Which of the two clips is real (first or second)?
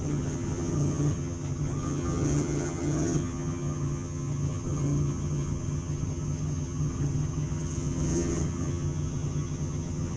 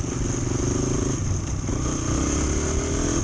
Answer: second